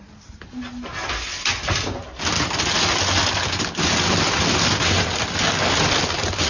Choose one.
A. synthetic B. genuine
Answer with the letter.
B